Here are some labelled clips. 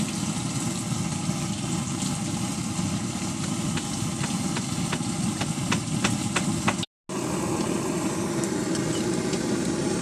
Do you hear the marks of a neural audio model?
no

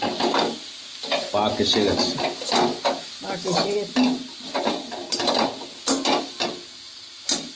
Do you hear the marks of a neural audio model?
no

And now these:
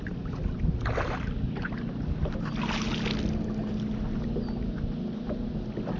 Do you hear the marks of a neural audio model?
no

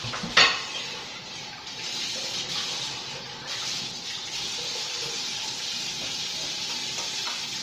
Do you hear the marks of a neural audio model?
no